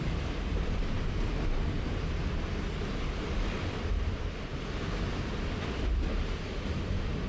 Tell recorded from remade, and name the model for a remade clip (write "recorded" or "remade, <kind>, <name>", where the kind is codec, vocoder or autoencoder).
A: recorded